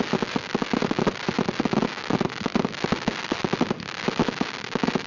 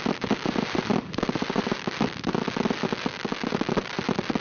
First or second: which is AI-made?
second